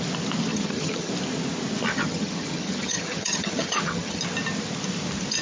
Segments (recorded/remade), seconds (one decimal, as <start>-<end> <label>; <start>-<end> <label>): 0.0-0.5 recorded; 0.5-1.1 remade; 1.1-1.9 recorded; 1.9-4.2 remade; 4.2-5.4 recorded